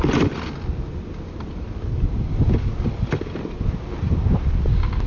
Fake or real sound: real